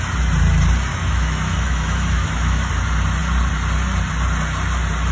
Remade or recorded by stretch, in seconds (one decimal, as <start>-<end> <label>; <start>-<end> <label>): 0.0-0.9 recorded; 0.9-2.7 remade; 2.7-5.1 recorded